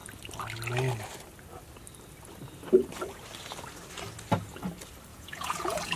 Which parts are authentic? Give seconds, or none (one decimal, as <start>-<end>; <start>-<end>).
0.0-5.1